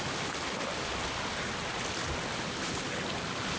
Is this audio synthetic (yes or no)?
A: no